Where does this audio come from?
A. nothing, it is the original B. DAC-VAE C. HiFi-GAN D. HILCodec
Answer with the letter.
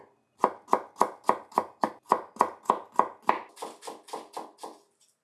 A